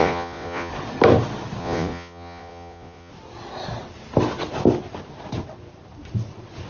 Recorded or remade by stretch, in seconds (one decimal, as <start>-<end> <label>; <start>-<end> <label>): 0.0-0.7 remade; 0.7-1.6 recorded; 1.6-3.1 remade; 3.1-6.7 recorded